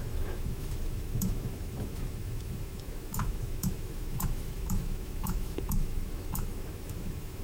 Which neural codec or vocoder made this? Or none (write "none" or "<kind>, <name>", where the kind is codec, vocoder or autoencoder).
autoencoder, DAC-VAE